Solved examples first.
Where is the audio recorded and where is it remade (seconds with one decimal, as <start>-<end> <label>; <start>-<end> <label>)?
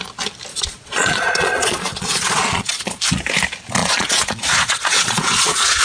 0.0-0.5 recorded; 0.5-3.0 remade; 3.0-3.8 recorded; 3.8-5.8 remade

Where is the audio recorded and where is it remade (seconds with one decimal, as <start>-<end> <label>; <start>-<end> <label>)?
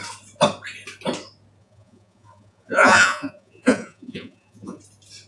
0.0-1.6 recorded; 1.6-4.8 remade; 4.8-5.3 recorded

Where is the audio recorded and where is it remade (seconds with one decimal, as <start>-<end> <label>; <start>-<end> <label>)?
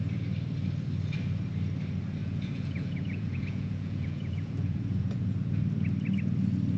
0.0-2.2 recorded; 2.2-5.6 remade; 5.6-6.8 recorded